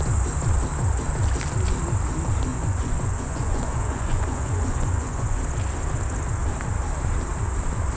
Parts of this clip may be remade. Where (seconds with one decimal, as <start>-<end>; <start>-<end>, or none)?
2.5-5.4